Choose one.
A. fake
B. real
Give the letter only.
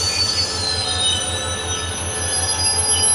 B